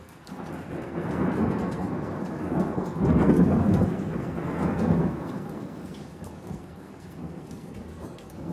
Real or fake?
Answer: fake